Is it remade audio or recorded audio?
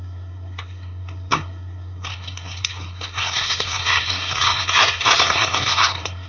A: remade